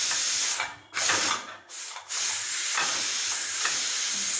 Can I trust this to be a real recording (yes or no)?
yes